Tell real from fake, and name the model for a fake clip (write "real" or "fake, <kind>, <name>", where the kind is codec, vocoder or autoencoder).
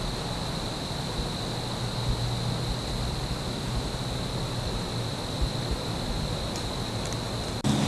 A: real